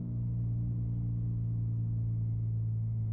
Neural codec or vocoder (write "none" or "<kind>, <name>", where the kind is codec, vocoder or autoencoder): none